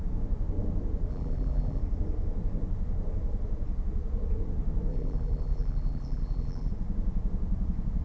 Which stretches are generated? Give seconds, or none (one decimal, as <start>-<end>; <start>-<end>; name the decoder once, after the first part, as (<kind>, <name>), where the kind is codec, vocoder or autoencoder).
1.1-1.8 (vocoder, BigVGAN v2); 4.9-6.7